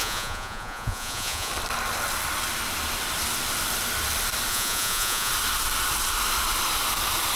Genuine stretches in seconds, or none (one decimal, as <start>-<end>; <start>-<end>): 1.5-4.5; 5.3-7.4